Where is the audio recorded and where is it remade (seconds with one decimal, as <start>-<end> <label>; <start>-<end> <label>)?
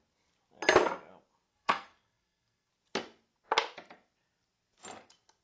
0.0-1.5 recorded; 1.5-2.7 remade; 2.7-5.4 recorded